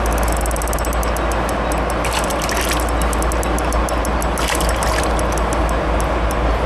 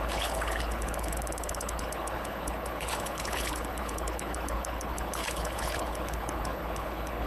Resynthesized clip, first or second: second